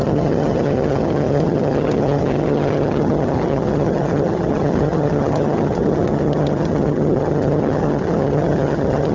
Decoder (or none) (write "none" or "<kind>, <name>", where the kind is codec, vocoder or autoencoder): vocoder, HiFi-GAN